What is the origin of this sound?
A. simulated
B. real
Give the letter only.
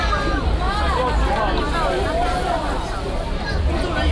B